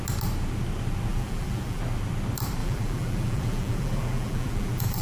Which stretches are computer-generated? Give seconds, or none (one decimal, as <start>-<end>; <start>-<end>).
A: 1.1-1.8; 2.6-5.0